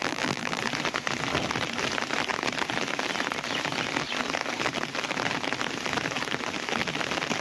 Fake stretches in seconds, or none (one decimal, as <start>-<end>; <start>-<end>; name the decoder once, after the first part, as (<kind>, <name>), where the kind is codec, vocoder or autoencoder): 0.0-0.6 (vocoder, BigVGAN v2)